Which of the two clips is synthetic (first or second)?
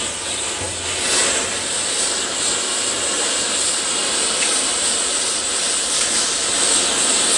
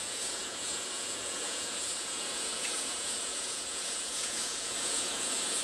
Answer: second